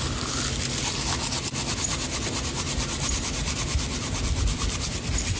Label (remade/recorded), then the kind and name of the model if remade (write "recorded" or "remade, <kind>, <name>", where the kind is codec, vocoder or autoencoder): recorded